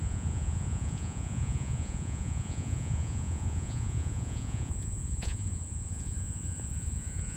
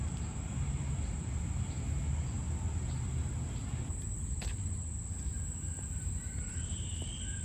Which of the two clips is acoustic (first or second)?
second